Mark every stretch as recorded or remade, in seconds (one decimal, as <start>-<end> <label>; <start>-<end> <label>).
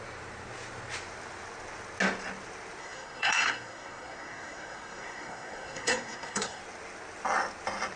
0.0-2.8 recorded; 2.8-6.6 remade; 6.6-8.0 recorded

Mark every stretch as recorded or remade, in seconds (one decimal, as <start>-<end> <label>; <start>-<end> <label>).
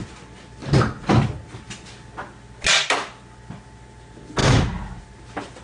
0.0-5.6 recorded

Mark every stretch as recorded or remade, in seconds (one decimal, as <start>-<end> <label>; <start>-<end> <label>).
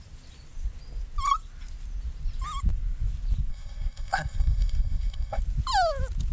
0.0-3.5 recorded; 3.5-5.4 remade; 5.4-6.3 recorded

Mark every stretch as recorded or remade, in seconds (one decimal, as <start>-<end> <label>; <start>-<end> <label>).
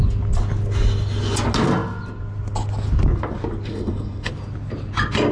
0.0-3.7 recorded; 3.7-4.3 remade; 4.3-5.3 recorded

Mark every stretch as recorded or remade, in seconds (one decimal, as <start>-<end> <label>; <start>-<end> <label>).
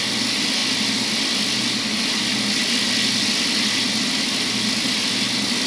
0.0-5.7 recorded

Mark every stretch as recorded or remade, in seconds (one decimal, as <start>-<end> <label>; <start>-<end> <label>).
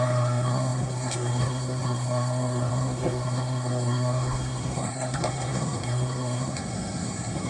0.0-7.5 remade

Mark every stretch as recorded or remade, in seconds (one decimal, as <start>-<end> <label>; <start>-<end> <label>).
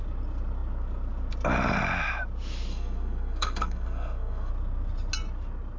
0.0-2.7 recorded; 2.7-4.5 remade; 4.5-5.8 recorded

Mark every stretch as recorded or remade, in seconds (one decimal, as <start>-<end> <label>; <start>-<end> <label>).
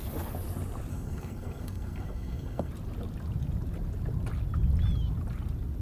0.0-0.9 recorded; 0.9-2.7 remade; 2.7-5.8 recorded